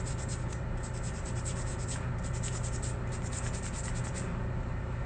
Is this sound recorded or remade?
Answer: recorded